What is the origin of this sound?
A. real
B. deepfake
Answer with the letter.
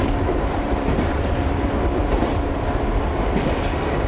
B